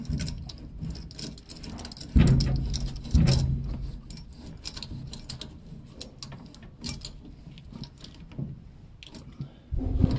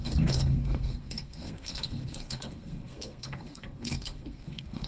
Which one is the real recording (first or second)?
first